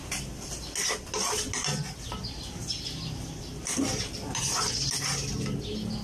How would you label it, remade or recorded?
recorded